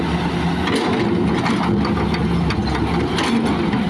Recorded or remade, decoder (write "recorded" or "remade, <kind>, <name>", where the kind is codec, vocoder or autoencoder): recorded